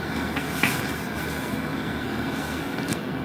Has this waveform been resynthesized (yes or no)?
yes